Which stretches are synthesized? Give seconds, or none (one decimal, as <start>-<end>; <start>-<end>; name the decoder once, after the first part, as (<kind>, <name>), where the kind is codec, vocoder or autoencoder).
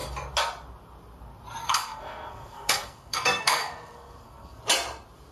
1.6-4.6 (codec, SNAC)